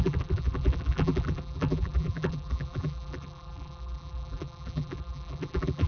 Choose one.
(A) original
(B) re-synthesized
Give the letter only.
B